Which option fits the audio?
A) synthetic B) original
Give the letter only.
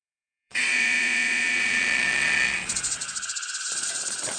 A